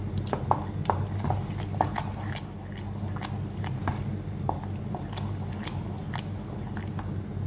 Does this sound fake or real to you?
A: real